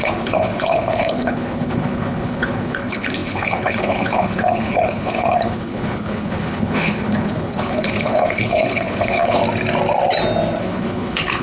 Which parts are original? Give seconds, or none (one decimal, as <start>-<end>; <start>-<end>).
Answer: 9.4-10.6